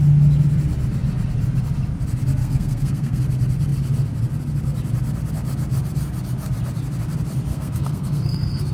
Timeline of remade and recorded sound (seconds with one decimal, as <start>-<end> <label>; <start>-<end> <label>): 0.0-2.4 recorded; 2.4-3.2 remade; 3.2-7.5 recorded; 7.5-8.7 remade